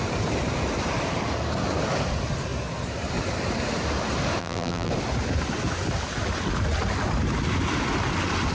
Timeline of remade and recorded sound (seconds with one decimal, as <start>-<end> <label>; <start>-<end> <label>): 0.0-4.4 recorded; 4.4-4.9 remade; 4.9-8.5 recorded